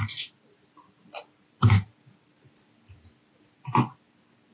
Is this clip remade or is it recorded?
recorded